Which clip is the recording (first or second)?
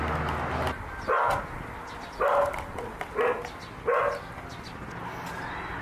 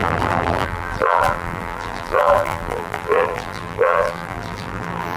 first